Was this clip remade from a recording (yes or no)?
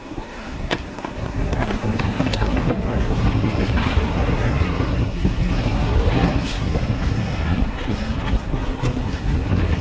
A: yes